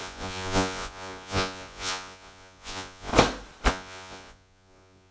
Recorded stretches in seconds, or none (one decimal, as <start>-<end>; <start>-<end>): 3.1-3.7

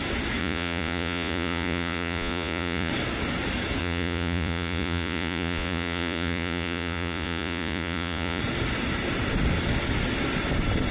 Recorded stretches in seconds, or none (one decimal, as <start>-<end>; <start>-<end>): 0.0-0.4; 2.9-3.8; 8.4-10.9

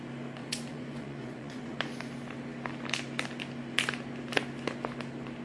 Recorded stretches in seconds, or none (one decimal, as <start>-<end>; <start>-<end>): 0.0-0.4; 1.9-5.4

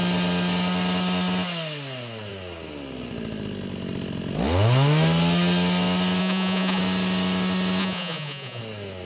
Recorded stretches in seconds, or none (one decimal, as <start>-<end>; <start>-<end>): 0.0-6.2; 6.8-7.8; 8.6-9.1

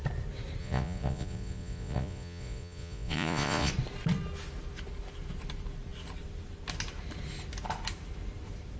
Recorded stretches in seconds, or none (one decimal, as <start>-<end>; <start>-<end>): 0.0-0.6; 3.7-8.8

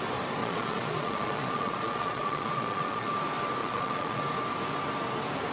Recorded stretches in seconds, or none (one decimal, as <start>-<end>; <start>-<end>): 0.0-0.4; 3.1-3.6; 4.2-5.5